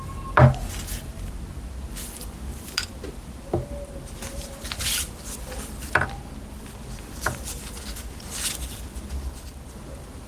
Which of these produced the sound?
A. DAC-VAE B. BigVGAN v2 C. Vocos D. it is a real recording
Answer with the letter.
D